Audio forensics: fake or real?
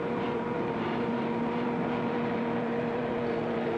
fake